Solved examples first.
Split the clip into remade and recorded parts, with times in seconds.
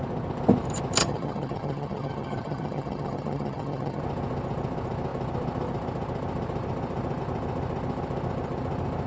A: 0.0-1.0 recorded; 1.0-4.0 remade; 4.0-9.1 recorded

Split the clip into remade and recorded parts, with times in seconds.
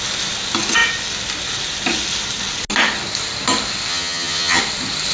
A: 0.0-3.9 recorded; 3.9-4.6 remade; 4.6-5.1 recorded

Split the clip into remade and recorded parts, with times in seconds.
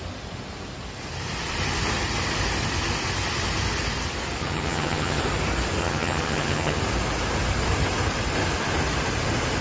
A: 0.0-4.4 recorded; 4.4-5.2 remade; 5.2-5.8 recorded; 5.8-6.8 remade; 6.8-9.6 recorded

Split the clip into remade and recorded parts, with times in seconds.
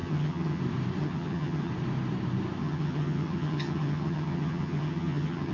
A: 0.0-0.6 remade; 0.6-1.0 recorded; 1.0-1.7 remade; 1.7-2.6 recorded; 2.6-5.5 remade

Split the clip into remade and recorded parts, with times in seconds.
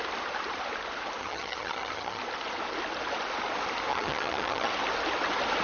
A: 0.0-1.2 recorded; 1.2-2.2 remade; 2.2-3.9 recorded; 3.9-4.7 remade; 4.7-5.6 recorded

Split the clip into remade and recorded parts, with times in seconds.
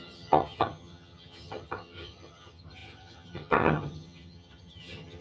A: 0.0-5.2 remade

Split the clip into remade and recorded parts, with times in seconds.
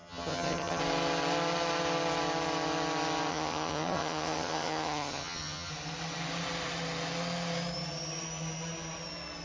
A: 0.0-0.8 remade; 0.8-3.3 recorded; 3.3-5.7 remade; 5.7-9.4 recorded